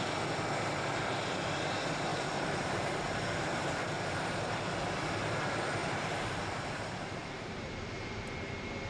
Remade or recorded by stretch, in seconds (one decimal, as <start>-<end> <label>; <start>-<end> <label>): 0.0-2.1 recorded; 2.1-4.6 remade; 4.6-5.8 recorded; 5.8-8.3 remade; 8.3-8.9 recorded